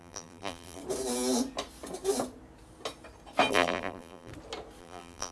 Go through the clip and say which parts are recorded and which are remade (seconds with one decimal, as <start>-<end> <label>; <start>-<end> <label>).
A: 0.0-0.8 remade; 0.8-3.5 recorded; 3.5-4.3 remade; 4.3-4.8 recorded; 4.8-5.3 remade